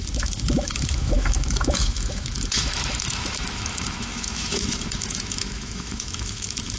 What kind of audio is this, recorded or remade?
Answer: remade